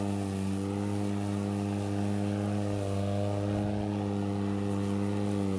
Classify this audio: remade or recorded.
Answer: recorded